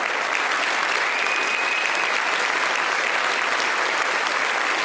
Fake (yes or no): no